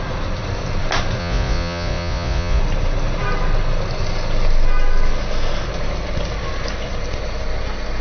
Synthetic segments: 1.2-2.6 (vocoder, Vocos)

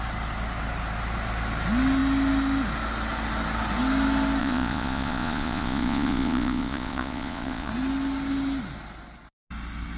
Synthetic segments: 4.4-7.7 (vocoder, Vocos)